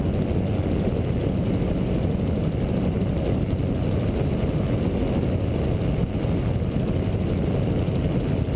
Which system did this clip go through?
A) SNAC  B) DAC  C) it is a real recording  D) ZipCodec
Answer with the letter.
C